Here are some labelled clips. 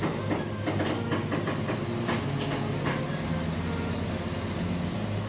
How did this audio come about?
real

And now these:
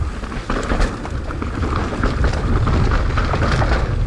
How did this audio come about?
real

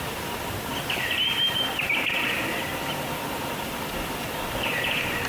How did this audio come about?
real